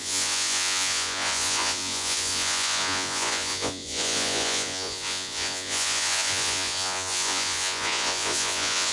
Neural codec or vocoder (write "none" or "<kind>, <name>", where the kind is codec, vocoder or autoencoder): vocoder, Vocos